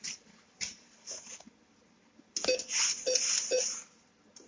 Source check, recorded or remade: recorded